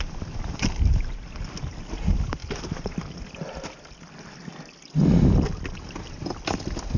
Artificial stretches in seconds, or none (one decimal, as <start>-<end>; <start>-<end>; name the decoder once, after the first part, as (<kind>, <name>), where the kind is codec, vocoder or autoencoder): none

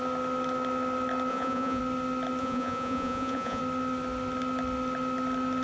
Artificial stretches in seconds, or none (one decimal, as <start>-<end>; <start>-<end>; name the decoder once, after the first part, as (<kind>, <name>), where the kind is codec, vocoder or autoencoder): 1.3-1.8 (vocoder, Vocos); 2.4-3.6

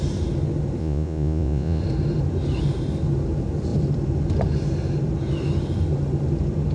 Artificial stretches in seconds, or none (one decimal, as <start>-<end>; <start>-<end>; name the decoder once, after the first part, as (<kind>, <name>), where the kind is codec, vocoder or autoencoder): 0.8-1.8 (vocoder, Vocos)

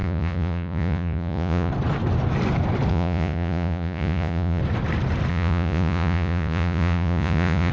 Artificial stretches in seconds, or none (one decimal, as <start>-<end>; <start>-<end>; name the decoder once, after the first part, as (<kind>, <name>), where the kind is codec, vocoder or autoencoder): 0.0-1.7 (vocoder, Vocos); 2.9-4.6; 5.3-7.7

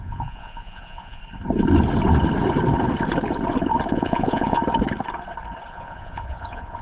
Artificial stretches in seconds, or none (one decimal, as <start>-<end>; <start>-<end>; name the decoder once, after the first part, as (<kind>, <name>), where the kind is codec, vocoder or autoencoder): 0.0-1.2 (vocoder, Vocos); 3.9-4.6; 5.7-6.8

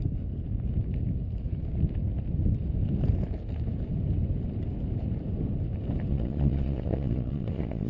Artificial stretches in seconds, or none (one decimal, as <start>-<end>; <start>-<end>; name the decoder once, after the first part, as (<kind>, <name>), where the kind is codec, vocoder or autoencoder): 6.1-7.9 (vocoder, Vocos)

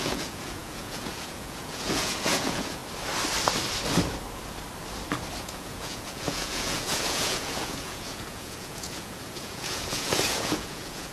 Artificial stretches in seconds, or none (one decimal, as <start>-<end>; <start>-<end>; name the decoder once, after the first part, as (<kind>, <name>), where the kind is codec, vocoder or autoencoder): 0.0-2.8 (vocoder, Vocos); 5.4-11.1